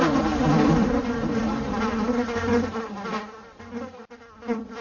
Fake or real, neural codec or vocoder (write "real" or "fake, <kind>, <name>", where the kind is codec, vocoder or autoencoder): real